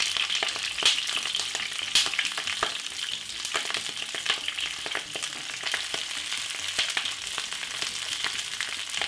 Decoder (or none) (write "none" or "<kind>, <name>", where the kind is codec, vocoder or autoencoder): none